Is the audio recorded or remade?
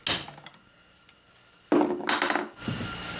recorded